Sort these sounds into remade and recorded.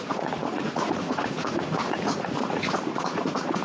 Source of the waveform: remade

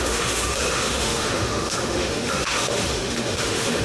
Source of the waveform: remade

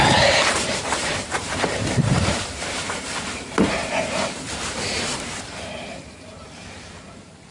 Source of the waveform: remade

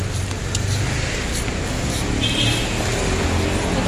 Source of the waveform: recorded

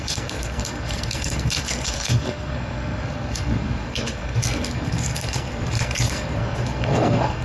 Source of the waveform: remade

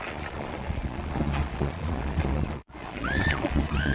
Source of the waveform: remade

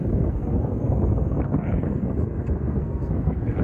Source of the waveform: remade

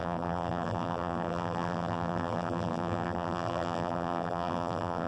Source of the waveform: remade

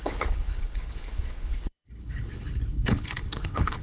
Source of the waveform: remade